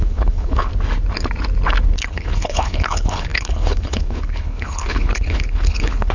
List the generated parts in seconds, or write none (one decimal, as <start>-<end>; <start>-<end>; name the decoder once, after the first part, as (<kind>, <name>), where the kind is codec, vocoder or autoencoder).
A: 0.0-0.7 (codec, HILCodec); 2.1-6.1